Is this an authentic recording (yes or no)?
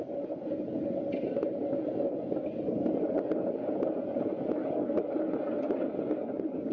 yes